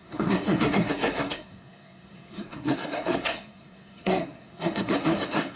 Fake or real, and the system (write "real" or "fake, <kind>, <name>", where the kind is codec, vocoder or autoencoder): fake, codec, SNAC